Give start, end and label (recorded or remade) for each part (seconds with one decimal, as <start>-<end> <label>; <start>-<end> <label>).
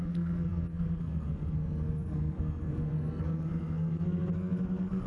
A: 0.0-5.1 remade